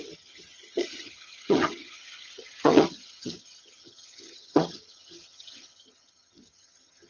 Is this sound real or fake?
fake